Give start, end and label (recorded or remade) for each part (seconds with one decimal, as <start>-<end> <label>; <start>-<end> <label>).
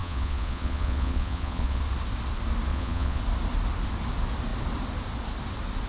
0.0-1.8 remade; 1.8-2.7 recorded; 2.7-3.2 remade; 3.2-5.9 recorded